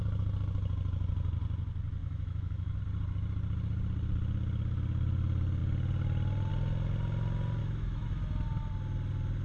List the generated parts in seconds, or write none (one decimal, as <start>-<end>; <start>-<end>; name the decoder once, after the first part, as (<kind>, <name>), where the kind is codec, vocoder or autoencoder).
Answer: 2.0-2.8 (autoencoder, DAC-VAE); 7.6-8.2